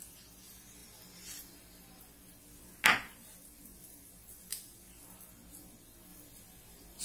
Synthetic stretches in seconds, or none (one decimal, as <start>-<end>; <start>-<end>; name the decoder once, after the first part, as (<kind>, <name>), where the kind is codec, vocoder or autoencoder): none